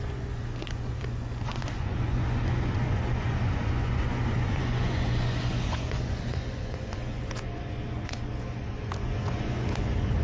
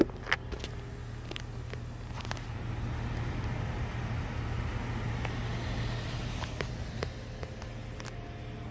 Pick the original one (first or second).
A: second